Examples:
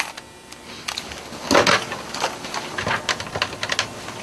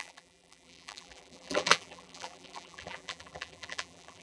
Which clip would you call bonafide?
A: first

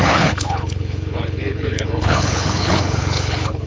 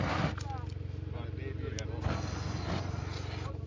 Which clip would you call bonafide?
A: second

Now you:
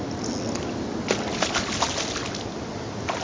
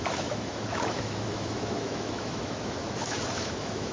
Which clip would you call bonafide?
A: first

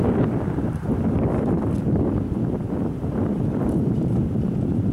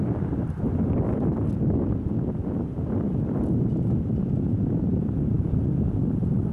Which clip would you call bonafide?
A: second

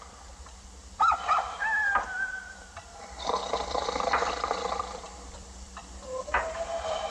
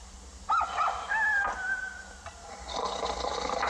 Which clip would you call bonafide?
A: second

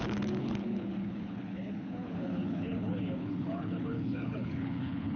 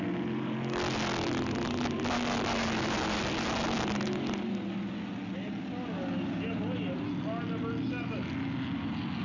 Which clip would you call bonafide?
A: second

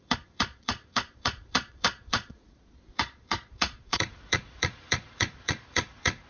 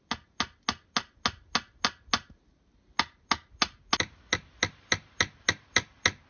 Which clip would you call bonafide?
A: second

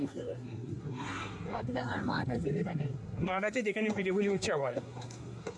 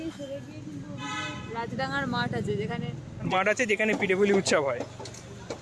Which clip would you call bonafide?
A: second